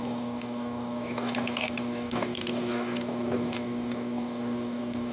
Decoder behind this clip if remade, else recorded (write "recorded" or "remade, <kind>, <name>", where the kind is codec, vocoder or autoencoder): remade, codec, DAC